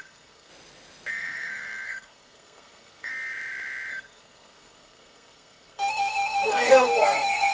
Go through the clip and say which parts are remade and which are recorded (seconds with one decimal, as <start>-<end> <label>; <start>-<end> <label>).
0.0-0.5 remade; 0.5-1.1 recorded; 1.1-3.1 remade; 3.1-3.9 recorded; 3.9-7.5 remade